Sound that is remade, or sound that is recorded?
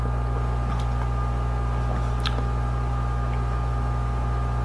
recorded